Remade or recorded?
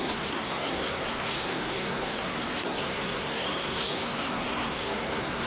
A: remade